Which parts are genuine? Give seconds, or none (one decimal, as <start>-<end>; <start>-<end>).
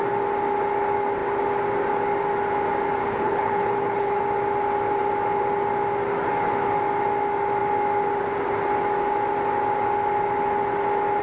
0.0-3.0; 4.2-11.2